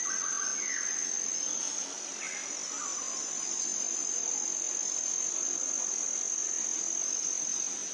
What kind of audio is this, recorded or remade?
recorded